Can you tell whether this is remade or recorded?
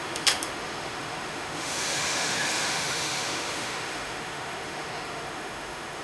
remade